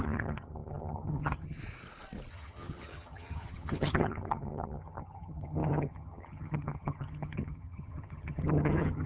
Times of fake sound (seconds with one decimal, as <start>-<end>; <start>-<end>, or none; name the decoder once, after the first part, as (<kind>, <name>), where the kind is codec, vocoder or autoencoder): 0.0-1.6 (vocoder, HiFi-GAN); 2.3-9.1

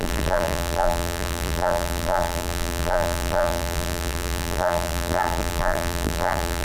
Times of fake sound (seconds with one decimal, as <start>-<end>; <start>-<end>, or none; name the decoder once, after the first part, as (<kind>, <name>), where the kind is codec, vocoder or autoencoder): 0.0-6.6 (vocoder, BigVGAN v2)

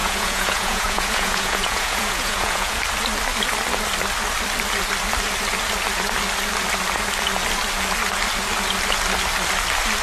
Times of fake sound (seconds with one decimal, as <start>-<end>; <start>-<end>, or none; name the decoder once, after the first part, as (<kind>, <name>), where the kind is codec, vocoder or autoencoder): 0.0-2.8 (vocoder, Vocos)

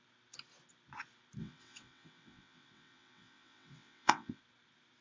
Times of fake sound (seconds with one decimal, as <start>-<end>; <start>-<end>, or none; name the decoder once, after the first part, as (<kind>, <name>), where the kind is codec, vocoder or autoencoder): 1.4-4.4 (vocoder, WaveNeXt)

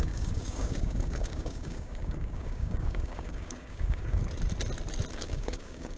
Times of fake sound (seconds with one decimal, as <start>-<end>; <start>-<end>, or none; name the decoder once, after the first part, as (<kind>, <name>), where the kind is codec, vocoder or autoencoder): 0.0-4.2 (codec, DAC); 5.1-6.0